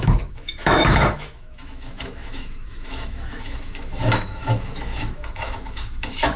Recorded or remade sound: remade